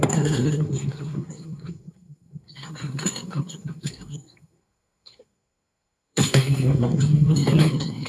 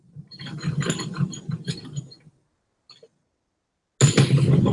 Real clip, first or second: second